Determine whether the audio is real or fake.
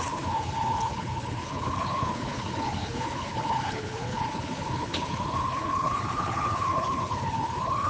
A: fake